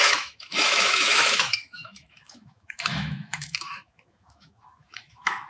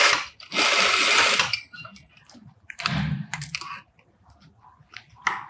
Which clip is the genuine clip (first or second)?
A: second